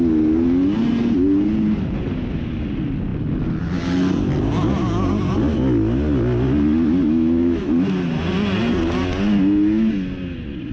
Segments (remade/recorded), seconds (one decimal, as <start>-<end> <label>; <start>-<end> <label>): 0.0-7.0 recorded; 7.0-7.6 remade; 7.6-10.7 recorded